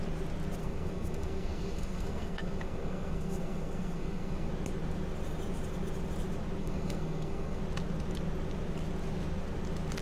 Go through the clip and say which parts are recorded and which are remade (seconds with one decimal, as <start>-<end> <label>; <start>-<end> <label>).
0.0-0.6 recorded; 0.6-4.5 remade; 4.5-6.6 recorded; 6.6-7.6 remade; 7.6-10.0 recorded